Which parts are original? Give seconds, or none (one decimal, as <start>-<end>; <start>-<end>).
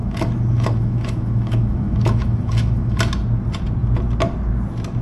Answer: 3.0-5.0